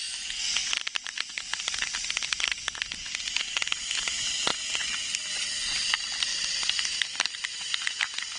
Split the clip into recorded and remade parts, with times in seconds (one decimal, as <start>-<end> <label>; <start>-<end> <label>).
0.0-8.4 recorded